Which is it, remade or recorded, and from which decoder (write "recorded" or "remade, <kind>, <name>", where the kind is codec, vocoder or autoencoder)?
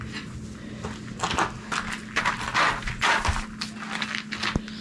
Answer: recorded